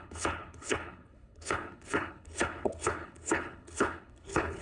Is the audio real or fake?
fake